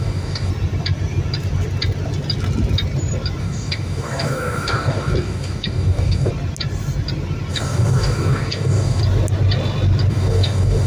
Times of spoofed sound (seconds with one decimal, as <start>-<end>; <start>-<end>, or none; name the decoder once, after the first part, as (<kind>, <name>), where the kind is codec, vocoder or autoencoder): 0.0-0.5 (codec, DAC); 3.4-6.3; 7.5-9.0; 10.1-10.9